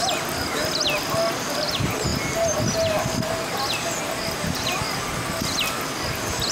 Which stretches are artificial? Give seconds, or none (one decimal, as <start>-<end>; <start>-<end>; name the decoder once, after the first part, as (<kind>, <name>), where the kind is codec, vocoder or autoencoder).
none